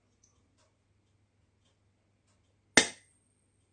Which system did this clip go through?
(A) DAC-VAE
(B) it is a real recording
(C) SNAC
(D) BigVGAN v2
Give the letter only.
B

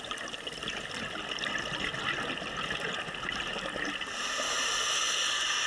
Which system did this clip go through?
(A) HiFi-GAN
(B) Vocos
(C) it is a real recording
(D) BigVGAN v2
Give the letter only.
C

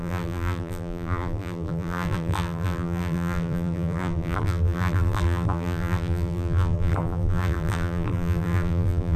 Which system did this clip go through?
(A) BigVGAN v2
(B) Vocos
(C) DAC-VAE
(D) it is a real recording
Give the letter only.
A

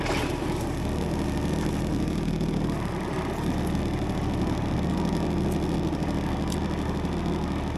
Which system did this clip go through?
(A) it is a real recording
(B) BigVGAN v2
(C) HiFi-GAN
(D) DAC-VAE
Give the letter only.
A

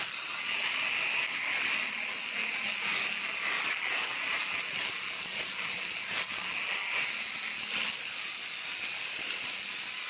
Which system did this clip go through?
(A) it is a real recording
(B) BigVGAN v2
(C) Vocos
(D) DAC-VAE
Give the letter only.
A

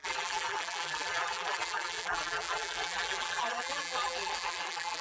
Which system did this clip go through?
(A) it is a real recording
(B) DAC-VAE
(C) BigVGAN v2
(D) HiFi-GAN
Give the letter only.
C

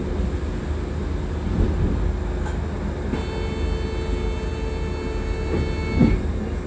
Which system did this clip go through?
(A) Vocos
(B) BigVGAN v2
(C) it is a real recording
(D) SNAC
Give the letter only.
C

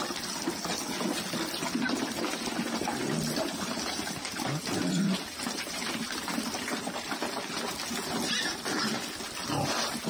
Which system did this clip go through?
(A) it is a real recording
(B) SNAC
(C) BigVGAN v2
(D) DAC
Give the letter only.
A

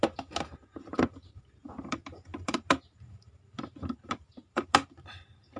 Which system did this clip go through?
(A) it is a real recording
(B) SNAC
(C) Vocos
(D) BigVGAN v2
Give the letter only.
D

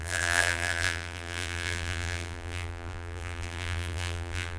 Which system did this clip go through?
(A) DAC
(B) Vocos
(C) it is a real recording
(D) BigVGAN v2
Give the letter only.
D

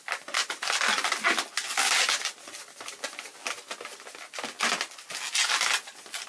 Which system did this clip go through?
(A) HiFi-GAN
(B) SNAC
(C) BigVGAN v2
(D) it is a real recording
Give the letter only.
D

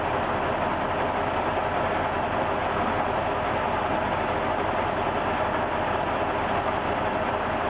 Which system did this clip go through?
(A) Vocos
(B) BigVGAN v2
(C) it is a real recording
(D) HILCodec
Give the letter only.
B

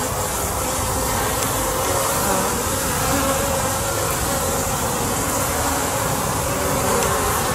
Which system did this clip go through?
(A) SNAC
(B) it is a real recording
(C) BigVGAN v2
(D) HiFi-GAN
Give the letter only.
B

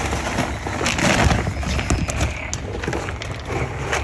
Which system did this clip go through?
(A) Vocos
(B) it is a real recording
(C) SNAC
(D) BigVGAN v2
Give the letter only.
B